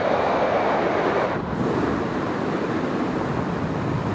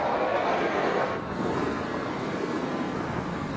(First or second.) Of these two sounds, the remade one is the second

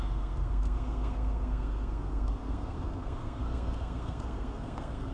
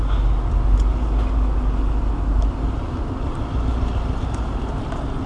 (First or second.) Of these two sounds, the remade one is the first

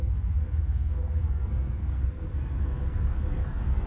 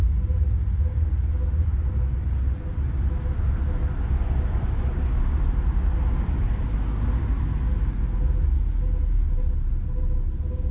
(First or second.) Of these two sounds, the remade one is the first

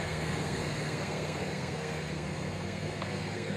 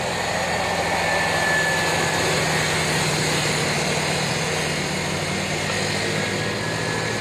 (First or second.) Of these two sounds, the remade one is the first